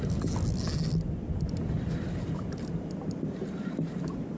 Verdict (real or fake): real